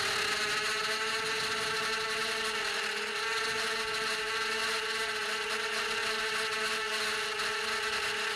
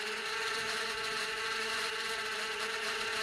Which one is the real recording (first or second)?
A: first